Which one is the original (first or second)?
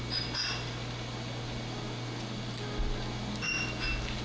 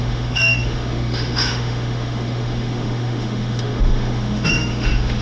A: first